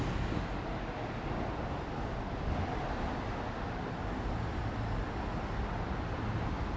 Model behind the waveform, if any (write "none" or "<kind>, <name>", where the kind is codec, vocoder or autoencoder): none